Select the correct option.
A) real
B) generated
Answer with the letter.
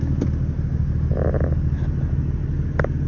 A